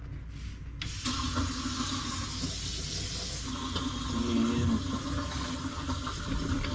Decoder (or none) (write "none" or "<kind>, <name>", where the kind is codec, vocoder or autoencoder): none